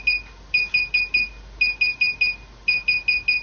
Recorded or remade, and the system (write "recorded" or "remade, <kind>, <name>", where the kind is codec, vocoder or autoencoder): recorded